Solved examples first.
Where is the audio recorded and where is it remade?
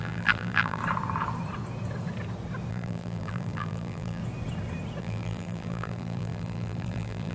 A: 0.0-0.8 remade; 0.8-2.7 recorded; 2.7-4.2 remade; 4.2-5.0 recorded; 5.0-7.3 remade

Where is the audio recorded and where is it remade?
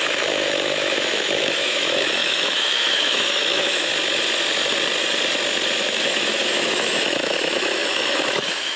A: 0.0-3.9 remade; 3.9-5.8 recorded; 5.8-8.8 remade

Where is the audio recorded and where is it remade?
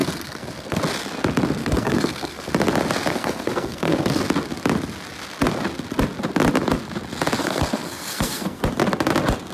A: 0.0-0.8 remade; 0.8-1.6 recorded; 1.6-2.5 remade; 2.5-3.1 recorded; 3.1-4.2 remade; 4.2-7.4 recorded; 7.4-8.6 remade; 8.6-9.5 recorded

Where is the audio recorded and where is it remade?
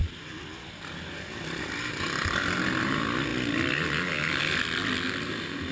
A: 0.0-5.7 recorded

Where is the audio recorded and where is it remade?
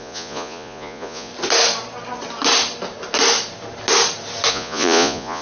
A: 0.0-1.3 remade; 1.3-4.5 recorded; 4.5-5.4 remade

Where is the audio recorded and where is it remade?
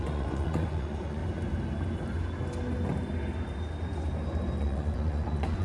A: 0.0-1.2 remade; 1.2-4.6 recorded; 4.6-5.6 remade